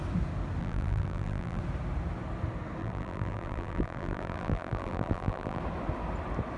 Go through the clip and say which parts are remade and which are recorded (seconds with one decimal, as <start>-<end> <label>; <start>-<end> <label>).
0.0-0.6 recorded; 0.6-1.6 remade; 1.6-2.8 recorded; 2.8-5.6 remade; 5.6-6.6 recorded